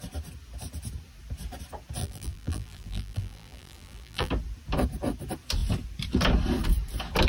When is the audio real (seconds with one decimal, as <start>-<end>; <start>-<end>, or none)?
0.0-2.0; 4.3-7.3